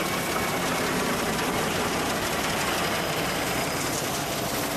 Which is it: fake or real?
real